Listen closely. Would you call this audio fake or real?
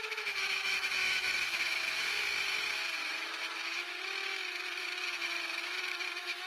fake